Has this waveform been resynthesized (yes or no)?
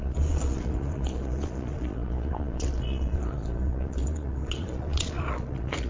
yes